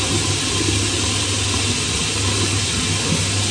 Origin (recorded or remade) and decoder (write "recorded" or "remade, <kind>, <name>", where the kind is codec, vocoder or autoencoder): recorded